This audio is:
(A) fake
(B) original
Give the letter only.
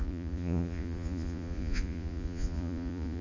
A